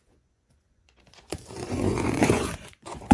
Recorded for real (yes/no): no